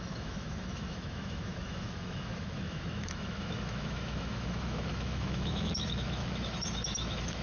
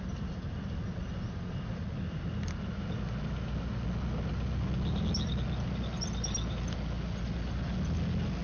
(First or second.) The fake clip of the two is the first